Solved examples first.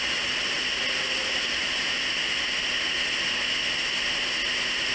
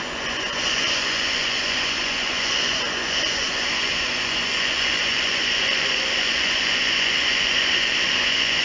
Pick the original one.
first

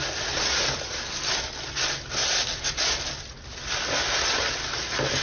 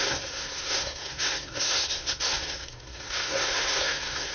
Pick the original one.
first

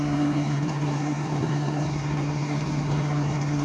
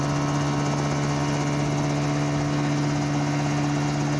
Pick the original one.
second